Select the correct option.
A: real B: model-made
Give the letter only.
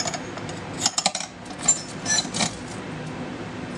A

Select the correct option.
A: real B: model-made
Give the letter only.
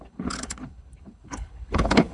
B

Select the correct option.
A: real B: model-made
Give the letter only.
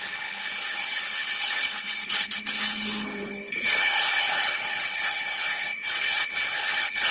B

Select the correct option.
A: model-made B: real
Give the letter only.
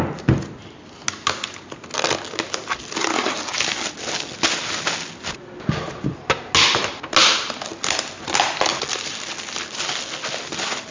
B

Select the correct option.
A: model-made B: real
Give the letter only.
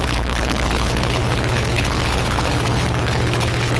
A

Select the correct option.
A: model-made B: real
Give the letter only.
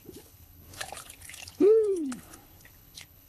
A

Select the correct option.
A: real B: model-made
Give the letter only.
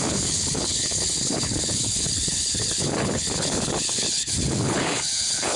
B